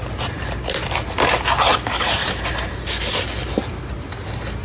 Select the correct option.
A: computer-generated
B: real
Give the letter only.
B